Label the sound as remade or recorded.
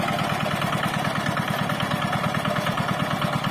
recorded